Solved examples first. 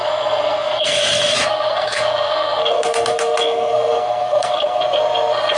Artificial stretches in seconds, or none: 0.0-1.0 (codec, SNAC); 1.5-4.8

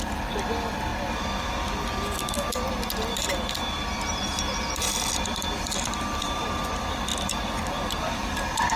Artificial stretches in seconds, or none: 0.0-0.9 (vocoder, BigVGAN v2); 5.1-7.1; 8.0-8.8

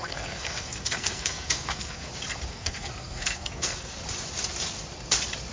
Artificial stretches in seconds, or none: 0.0-2.1 (codec, SNAC); 2.5-4.0